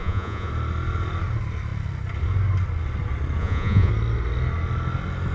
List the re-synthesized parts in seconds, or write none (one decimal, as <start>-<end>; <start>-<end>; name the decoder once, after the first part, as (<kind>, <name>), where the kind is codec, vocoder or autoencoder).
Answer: 0.0-0.5 (vocoder, Vocos); 3.4-3.9